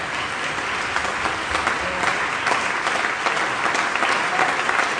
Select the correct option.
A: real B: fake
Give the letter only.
A